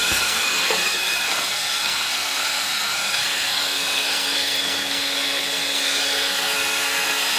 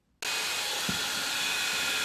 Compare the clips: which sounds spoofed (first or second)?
first